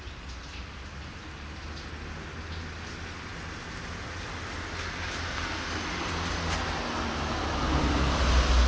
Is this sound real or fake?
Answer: real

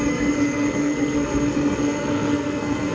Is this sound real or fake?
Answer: fake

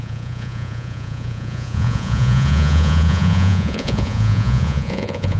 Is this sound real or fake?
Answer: fake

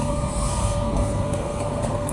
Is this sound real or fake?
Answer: fake